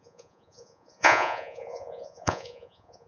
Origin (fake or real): fake